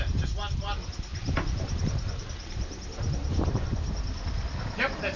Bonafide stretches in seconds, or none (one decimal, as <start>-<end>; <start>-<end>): 0.0-3.2; 3.8-5.2